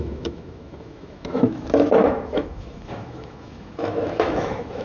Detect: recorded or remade remade